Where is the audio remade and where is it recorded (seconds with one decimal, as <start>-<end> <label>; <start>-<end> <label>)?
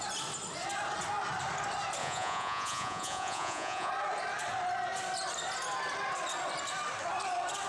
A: 0.0-2.0 recorded; 2.0-3.9 remade; 3.9-7.7 recorded